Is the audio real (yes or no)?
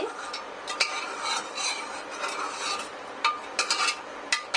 yes